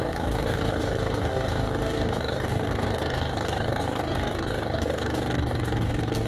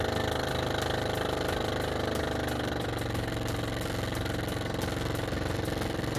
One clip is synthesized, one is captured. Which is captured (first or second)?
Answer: second